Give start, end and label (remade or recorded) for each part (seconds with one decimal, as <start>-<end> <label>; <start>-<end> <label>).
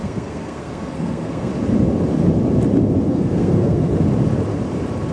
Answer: 0.0-1.5 remade; 1.5-3.0 recorded; 3.0-3.9 remade; 3.9-5.1 recorded